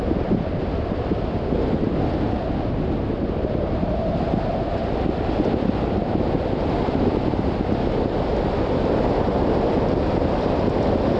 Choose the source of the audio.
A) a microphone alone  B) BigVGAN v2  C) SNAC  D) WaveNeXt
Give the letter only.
A